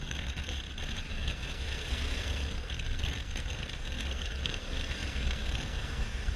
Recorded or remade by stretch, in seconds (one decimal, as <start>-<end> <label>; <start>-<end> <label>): 0.0-0.5 remade; 0.5-1.1 recorded; 1.1-6.4 remade